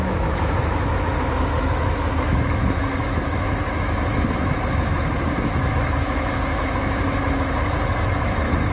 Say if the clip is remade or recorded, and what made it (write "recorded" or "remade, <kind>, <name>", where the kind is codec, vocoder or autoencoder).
remade, autoencoder, DAC-VAE